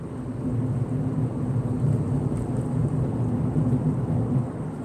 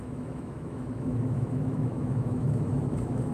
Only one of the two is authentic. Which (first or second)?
first